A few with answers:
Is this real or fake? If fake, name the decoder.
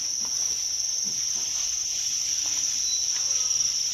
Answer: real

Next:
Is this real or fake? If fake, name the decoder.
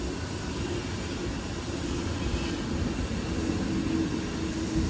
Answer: real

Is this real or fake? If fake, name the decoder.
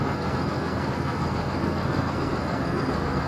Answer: fake, codec, SNAC